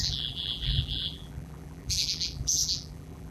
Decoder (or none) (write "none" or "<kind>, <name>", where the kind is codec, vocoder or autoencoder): vocoder, BigVGAN v2